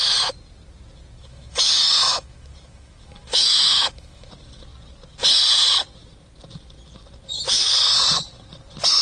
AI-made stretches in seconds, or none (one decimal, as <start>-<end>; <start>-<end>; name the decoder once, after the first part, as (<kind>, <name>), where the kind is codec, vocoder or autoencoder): 1.2-4.3 (autoencoder, DAC-VAE)